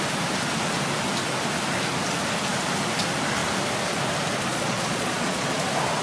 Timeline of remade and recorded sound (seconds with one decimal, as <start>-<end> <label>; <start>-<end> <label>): 0.0-4.5 recorded; 4.5-5.6 remade; 5.6-6.0 recorded

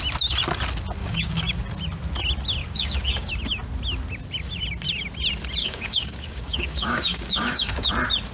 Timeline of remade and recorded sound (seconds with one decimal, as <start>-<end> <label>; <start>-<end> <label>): 0.0-1.0 recorded; 1.0-1.5 remade; 1.5-2.6 recorded; 2.6-3.3 remade; 3.3-5.6 recorded; 5.6-7.9 remade; 7.9-8.3 recorded